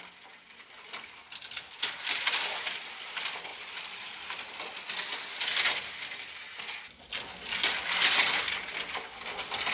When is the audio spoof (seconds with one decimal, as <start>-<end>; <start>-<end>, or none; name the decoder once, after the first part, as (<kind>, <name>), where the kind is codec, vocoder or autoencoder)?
none